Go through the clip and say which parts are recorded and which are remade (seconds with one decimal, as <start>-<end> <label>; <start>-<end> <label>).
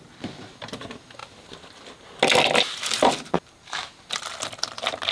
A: 0.0-5.1 recorded